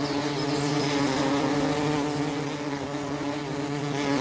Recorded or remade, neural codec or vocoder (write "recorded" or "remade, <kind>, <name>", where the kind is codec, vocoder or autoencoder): recorded